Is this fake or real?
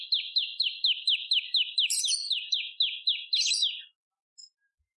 real